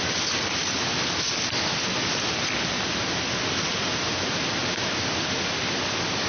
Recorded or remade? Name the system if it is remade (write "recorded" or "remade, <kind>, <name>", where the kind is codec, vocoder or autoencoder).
recorded